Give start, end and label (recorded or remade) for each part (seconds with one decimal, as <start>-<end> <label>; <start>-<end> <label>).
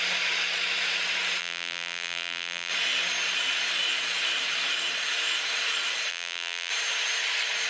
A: 0.0-1.4 recorded; 1.4-2.7 remade; 2.7-6.1 recorded; 6.1-6.7 remade; 6.7-7.7 recorded